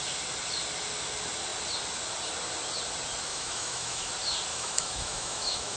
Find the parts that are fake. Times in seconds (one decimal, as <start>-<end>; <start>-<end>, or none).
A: 3.3-4.1; 4.5-5.8